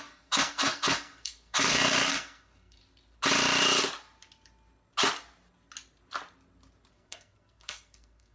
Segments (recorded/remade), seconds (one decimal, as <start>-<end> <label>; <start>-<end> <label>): 0.0-2.8 remade; 2.8-6.9 recorded; 6.9-8.3 remade